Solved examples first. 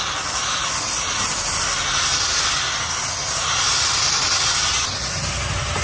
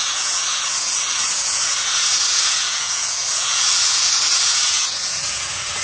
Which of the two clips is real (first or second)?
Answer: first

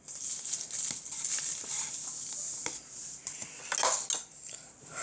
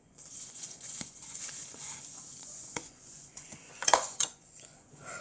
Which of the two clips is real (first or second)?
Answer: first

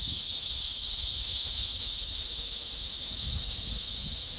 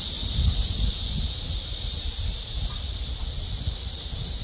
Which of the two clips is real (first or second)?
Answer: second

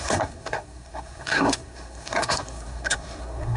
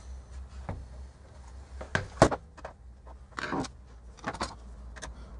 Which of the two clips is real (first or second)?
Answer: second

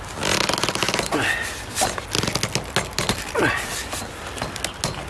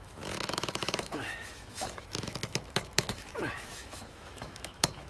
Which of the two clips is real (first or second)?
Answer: first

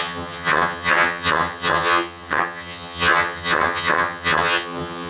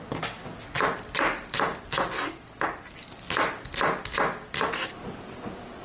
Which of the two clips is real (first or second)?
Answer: second